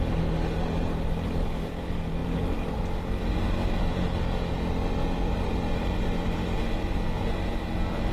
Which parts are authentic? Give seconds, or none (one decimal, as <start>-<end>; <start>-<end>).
0.0-8.1